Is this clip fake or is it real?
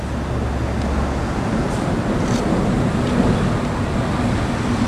real